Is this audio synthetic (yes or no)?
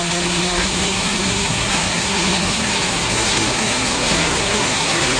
yes